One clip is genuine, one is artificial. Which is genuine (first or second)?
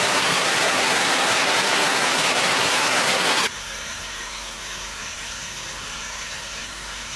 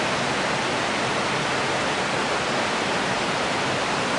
second